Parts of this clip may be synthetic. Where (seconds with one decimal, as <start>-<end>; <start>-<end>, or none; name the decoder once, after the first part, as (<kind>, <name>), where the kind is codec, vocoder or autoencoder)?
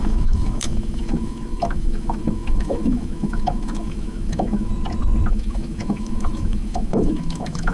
0.0-4.7 (autoencoder, DAC-VAE); 5.3-7.7